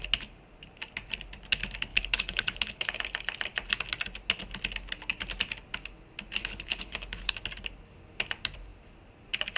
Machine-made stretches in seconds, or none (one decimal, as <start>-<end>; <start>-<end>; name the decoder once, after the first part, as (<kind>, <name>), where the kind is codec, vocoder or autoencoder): 1.9-3.0 (codec, HILCodec); 6.4-7.3